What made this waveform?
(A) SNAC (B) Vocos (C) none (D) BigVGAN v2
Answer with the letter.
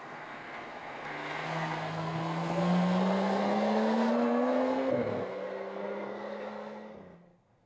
A